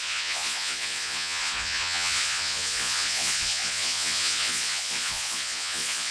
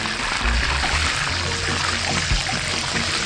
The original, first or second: second